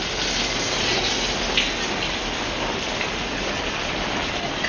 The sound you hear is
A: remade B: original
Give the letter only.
B